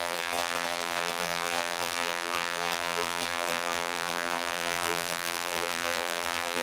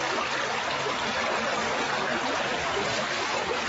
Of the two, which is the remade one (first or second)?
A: first